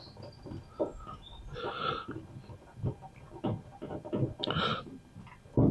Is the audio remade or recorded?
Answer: recorded